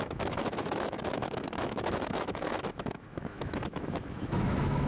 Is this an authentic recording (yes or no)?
no